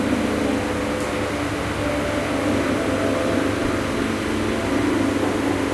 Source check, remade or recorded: recorded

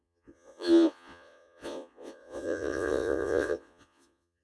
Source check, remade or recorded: remade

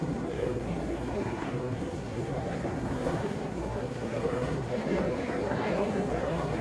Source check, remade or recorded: remade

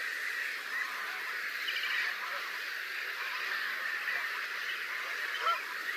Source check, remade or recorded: recorded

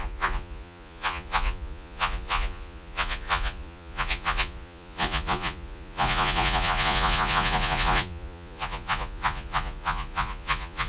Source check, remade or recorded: remade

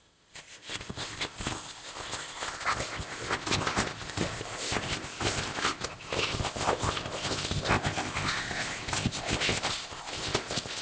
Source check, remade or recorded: remade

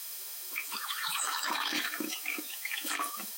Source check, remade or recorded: remade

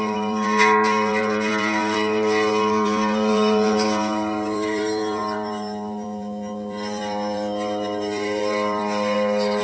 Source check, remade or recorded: remade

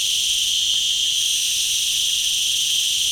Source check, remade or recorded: recorded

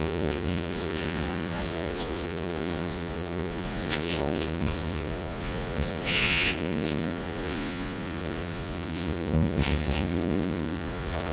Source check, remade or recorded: remade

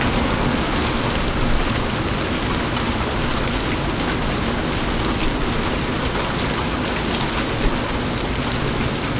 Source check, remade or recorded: recorded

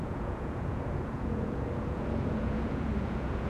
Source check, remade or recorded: remade